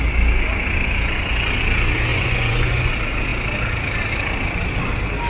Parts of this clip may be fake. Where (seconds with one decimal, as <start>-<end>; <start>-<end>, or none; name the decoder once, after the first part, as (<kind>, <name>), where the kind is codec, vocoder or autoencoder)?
2.1-2.9 (vocoder, Vocos)

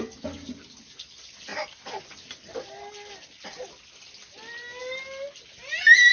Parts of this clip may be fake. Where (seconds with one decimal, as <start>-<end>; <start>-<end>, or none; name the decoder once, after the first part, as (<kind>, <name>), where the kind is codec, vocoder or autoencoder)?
none

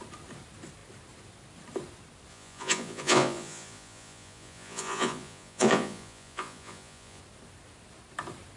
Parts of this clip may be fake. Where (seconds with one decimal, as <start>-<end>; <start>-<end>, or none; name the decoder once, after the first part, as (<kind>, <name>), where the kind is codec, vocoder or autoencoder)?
2.3-7.2 (vocoder, Vocos)

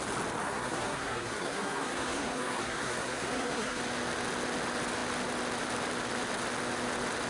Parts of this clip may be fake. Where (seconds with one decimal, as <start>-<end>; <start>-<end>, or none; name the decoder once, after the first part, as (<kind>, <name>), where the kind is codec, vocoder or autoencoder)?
0.4-3.8 (codec, SNAC)

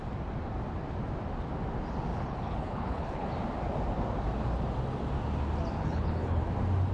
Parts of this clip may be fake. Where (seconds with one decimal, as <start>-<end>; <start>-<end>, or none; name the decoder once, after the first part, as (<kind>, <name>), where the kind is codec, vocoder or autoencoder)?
2.1-3.3 (codec, HILCodec); 5.8-6.4